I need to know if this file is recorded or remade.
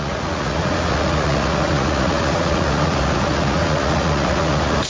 remade